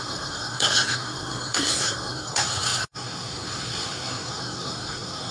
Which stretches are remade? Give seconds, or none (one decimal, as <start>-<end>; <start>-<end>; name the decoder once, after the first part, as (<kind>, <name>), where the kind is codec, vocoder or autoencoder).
0.0-5.3 (codec, SNAC)